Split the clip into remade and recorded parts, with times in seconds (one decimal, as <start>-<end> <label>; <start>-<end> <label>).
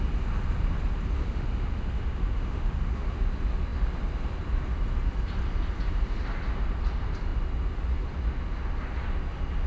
0.0-1.2 recorded; 1.2-3.2 remade; 3.2-9.7 recorded